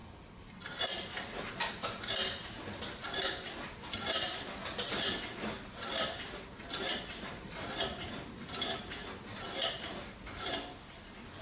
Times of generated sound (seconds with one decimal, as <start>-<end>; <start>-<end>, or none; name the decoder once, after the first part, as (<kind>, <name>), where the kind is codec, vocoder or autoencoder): 1.7-9.0 (vocoder, BigVGAN v2); 11.0-11.4